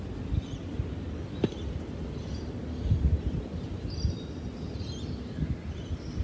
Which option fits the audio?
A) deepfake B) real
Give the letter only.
B